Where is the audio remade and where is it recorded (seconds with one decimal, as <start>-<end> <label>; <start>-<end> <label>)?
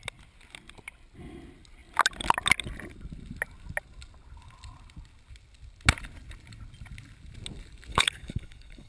0.0-7.9 recorded; 7.9-8.9 remade